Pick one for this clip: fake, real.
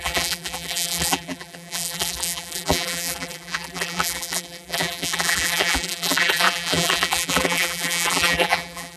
fake